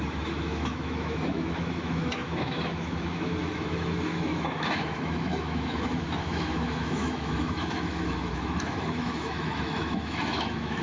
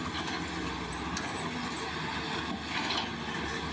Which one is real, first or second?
second